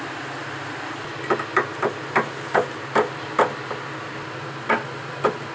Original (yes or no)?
yes